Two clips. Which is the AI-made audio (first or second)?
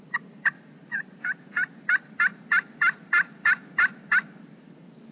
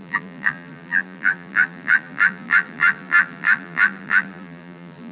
second